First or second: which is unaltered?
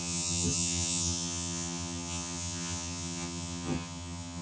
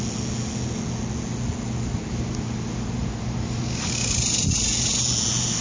second